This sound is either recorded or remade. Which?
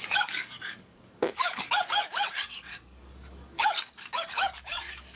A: remade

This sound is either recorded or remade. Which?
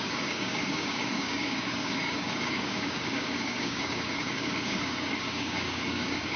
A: remade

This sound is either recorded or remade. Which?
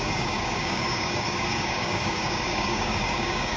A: remade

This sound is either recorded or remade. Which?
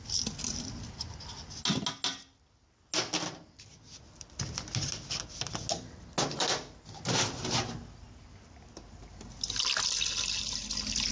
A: recorded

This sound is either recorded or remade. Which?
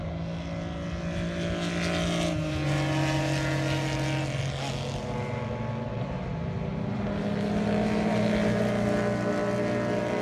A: recorded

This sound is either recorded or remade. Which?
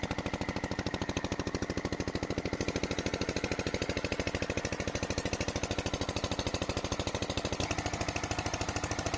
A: recorded